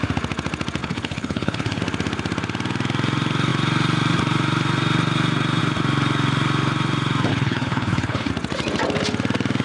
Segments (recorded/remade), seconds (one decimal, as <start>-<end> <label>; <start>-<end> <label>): 0.0-0.8 recorded; 0.8-1.8 remade; 1.8-7.3 recorded; 7.3-8.3 remade; 8.3-9.6 recorded